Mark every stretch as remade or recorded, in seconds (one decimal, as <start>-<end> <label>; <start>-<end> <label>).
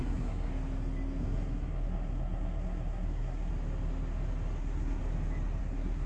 0.0-0.5 remade; 0.5-1.2 recorded; 1.2-3.5 remade; 3.5-4.6 recorded; 4.6-5.0 remade; 5.0-5.6 recorded; 5.6-6.1 remade